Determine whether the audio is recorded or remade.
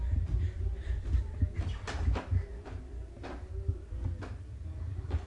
recorded